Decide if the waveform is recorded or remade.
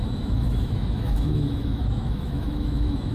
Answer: remade